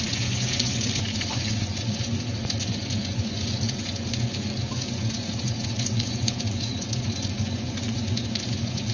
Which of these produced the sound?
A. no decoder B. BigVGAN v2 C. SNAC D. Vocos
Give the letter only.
D